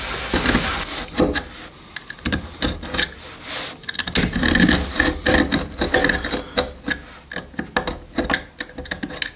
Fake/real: real